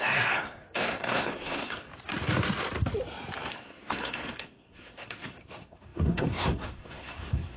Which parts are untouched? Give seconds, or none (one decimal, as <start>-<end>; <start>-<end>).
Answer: 1.9-3.5